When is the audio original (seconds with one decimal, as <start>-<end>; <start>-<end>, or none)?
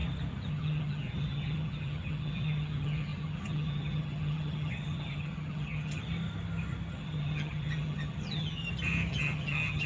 0.0-0.5; 6.0-6.9; 8.6-9.1